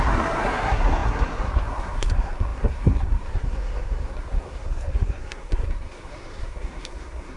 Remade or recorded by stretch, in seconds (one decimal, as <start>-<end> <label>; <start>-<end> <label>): 0.0-7.4 remade